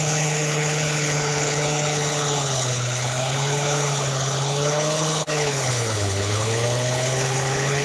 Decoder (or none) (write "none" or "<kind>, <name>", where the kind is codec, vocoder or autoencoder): codec, HILCodec